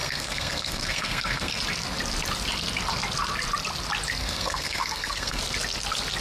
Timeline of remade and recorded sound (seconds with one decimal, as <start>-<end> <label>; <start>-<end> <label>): 0.0-1.6 remade; 1.6-4.2 recorded; 4.2-5.4 remade; 5.4-6.2 recorded